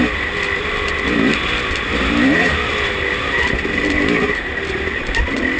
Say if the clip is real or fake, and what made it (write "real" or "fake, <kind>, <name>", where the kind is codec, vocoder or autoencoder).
real